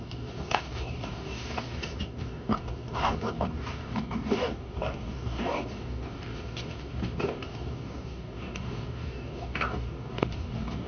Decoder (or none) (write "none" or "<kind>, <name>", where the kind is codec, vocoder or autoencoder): codec, DAC